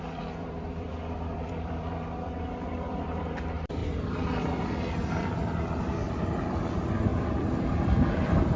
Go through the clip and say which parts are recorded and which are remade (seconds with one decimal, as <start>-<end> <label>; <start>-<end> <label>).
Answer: 0.0-3.8 remade; 3.8-6.1 recorded; 6.1-8.6 remade